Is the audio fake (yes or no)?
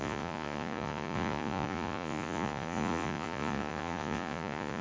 yes